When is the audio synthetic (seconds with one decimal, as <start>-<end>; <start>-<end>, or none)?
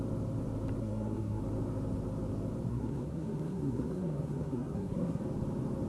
0.8-1.4; 2.7-5.2